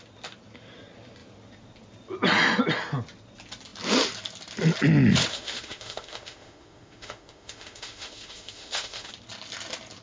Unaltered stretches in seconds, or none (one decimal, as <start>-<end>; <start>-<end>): 0.0-5.3; 9.1-10.0